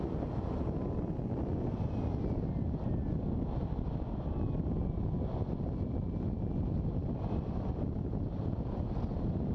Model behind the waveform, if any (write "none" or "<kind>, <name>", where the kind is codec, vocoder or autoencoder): none